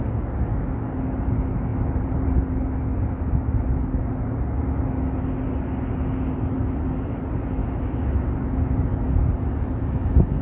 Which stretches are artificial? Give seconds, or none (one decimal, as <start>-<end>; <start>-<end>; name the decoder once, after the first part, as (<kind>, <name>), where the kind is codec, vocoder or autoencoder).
1.7-2.4 (vocoder, BigVGAN v2)